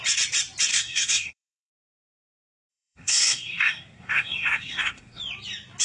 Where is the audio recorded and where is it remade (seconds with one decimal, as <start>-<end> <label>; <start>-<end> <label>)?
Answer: 0.0-0.7 recorded; 0.7-1.7 remade; 1.7-2.7 recorded; 2.7-5.2 remade; 5.2-5.8 recorded